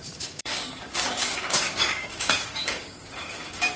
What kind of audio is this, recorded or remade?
remade